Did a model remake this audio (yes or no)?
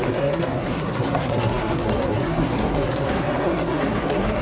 yes